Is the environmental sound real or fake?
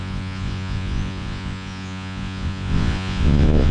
fake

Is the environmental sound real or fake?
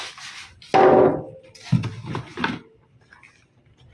real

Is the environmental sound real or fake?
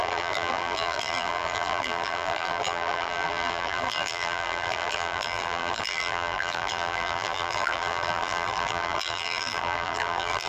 fake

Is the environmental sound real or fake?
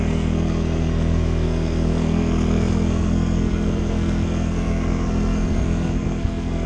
fake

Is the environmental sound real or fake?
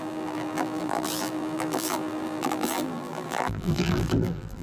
fake